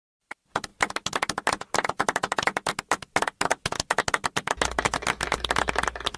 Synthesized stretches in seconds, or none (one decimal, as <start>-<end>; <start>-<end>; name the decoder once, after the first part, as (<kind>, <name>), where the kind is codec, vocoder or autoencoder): none